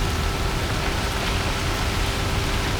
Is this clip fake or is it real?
real